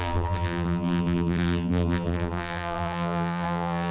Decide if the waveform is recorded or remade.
remade